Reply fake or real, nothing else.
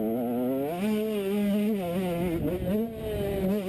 real